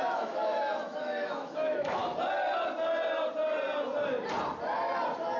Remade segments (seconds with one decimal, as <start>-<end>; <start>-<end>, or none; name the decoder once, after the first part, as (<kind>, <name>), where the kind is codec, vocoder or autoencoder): 0.0-2.0 (autoencoder, DAC-VAE)